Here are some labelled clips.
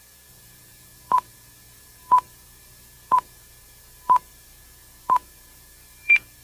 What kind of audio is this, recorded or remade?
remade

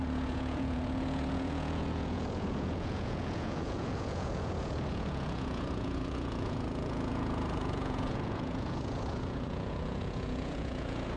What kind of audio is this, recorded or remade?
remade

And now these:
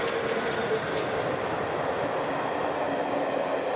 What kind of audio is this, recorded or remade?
recorded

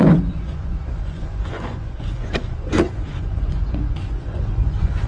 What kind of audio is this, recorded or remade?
remade